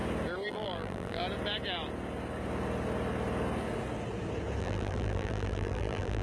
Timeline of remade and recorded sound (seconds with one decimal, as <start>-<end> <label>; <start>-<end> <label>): 0.0-0.5 recorded; 0.5-1.2 remade; 1.2-4.6 recorded; 4.6-6.2 remade